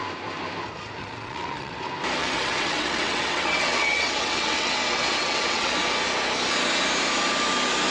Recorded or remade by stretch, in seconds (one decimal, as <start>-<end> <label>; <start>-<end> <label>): 0.0-1.0 recorded; 1.0-1.7 remade; 1.7-2.2 recorded; 2.2-5.7 remade; 5.7-7.9 recorded